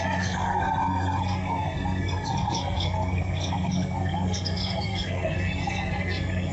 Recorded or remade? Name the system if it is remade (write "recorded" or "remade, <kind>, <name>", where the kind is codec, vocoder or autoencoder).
remade, codec, SNAC